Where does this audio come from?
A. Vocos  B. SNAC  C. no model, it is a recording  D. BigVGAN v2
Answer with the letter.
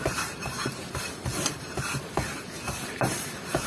D